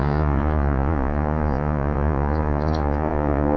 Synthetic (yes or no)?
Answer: yes